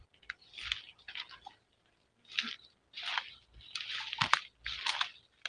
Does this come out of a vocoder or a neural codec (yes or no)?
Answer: no